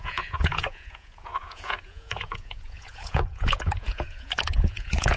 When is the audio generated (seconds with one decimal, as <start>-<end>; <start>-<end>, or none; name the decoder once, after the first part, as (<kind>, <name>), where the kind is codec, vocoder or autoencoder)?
0.0-5.2 (vocoder, Vocos)